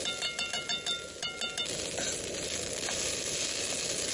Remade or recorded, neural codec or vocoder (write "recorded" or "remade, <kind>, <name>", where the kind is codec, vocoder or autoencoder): recorded